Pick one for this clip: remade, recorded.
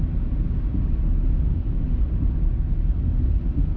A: recorded